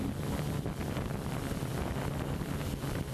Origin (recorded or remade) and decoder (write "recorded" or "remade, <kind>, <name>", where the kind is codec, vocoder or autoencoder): recorded